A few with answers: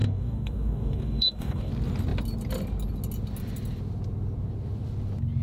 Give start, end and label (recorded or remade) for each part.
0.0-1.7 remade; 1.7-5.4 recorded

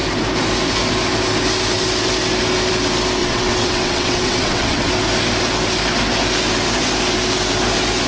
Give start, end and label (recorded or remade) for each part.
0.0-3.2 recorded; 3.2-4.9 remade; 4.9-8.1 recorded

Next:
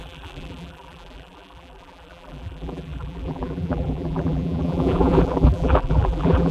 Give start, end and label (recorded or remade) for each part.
0.0-6.5 remade